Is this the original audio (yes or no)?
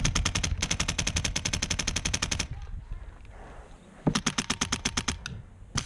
yes